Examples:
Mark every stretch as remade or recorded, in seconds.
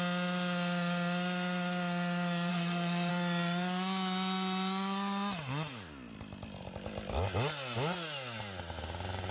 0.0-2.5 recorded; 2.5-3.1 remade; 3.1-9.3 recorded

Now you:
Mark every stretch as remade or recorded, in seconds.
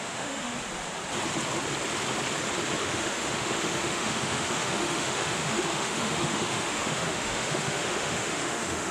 0.0-0.5 remade; 0.5-2.8 recorded; 2.8-8.9 remade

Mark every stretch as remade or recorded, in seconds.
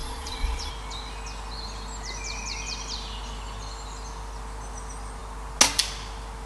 0.0-0.7 remade; 0.7-6.5 recorded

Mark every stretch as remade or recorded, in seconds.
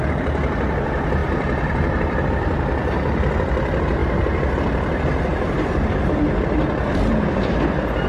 0.0-5.3 recorded; 5.3-6.2 remade; 6.2-8.1 recorded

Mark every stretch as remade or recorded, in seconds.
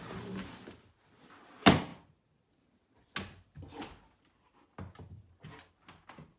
0.0-6.4 recorded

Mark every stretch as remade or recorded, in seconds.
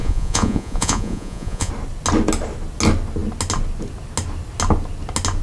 0.0-1.7 remade; 1.7-5.4 recorded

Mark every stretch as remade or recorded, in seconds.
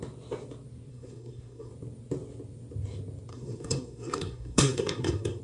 0.0-0.9 recorded; 0.9-1.7 remade; 1.7-3.3 recorded; 3.3-5.4 remade